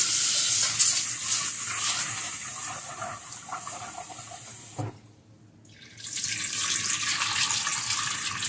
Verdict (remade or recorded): recorded